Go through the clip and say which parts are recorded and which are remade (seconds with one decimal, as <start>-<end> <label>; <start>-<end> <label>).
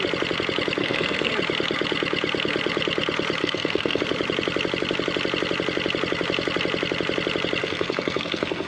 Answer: 0.0-0.8 recorded; 0.8-1.3 remade; 1.3-3.4 recorded; 3.4-4.0 remade; 4.0-7.6 recorded; 7.6-8.7 remade